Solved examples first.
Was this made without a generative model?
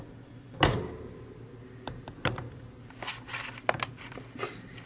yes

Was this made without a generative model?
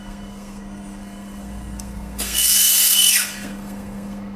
no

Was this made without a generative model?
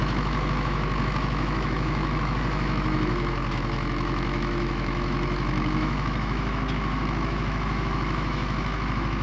no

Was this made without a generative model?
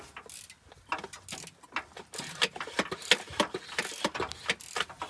yes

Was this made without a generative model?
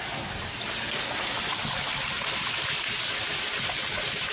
yes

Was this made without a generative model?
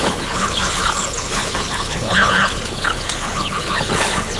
no